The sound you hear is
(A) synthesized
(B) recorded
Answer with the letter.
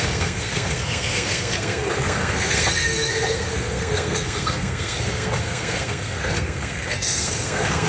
A